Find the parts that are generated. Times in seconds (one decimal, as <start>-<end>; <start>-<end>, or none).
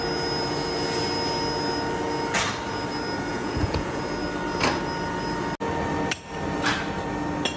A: 3.3-4.0